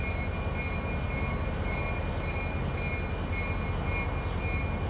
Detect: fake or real real